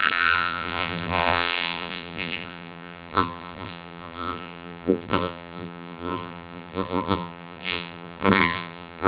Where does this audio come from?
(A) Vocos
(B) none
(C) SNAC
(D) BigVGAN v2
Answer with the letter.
D